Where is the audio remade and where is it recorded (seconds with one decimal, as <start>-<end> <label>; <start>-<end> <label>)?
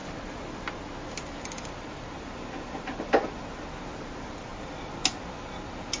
0.0-6.0 recorded